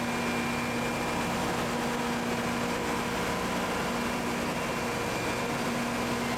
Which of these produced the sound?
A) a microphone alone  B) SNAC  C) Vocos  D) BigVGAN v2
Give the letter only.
A